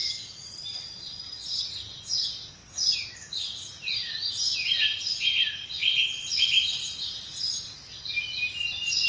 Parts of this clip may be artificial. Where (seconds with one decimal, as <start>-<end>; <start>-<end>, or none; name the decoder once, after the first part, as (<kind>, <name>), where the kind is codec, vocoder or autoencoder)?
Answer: 5.8-6.4 (vocoder, Vocos)